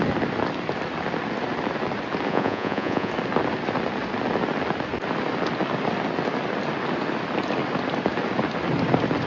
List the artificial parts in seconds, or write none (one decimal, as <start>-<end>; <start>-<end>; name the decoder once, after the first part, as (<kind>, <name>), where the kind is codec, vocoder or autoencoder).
2.3-3.1 (vocoder, Vocos)